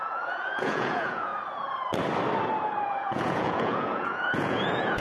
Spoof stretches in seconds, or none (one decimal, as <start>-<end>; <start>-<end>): 0.0-1.3; 2.8-5.0